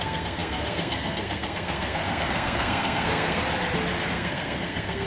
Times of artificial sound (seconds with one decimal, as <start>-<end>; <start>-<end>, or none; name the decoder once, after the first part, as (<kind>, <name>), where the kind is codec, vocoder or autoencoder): 0.0-3.4 (codec, SNAC); 4.1-5.1